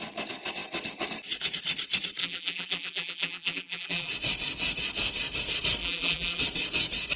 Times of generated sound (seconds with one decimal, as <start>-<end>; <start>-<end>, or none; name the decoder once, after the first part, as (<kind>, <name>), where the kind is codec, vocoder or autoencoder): 2.2-4.1 (vocoder, BigVGAN v2); 5.8-6.4